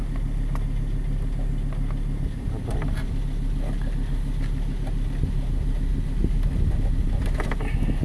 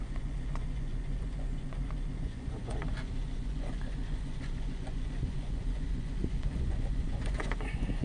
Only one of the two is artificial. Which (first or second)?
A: second